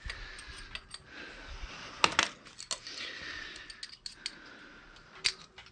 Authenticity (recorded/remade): recorded